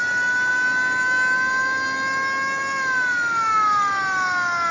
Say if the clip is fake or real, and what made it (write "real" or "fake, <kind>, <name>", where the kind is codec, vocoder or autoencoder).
real